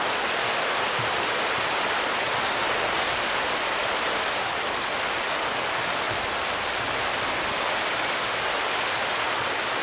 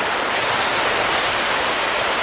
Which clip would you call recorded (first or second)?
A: first